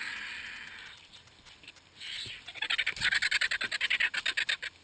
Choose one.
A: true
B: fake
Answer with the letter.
A